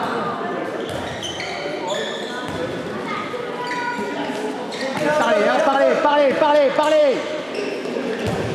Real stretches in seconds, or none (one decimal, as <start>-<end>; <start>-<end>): 0.0-8.5